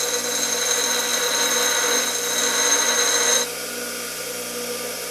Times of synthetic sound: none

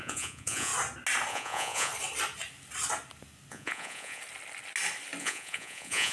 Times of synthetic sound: 0.0-0.7 (vocoder, Vocos); 1.3-1.9; 3.5-4.2; 5.2-6.1

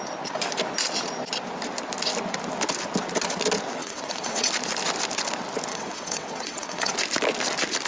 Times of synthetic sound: 3.8-4.5 (vocoder, WaveNeXt); 5.7-6.9

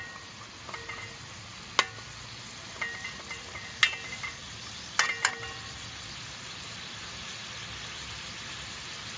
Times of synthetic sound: none

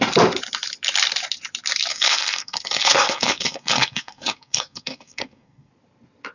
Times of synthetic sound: 1.9-5.7 (codec, SNAC)

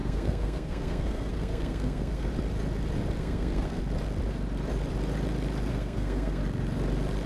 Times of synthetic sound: 0.0-2.3 (codec, SNAC); 3.2-3.8; 5.7-6.4